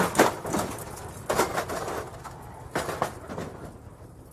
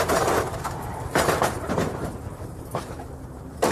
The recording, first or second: first